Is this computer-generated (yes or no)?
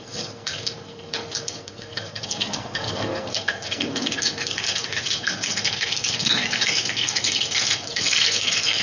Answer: yes